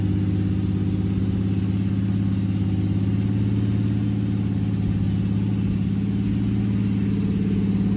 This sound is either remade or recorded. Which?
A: recorded